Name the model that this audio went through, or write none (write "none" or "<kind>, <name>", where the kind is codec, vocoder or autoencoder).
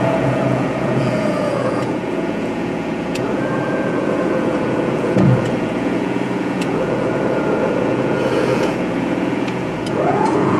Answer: vocoder, Vocos